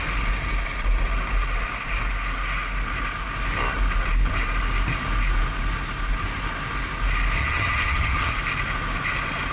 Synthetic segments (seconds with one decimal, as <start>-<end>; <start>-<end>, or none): 7.4-8.3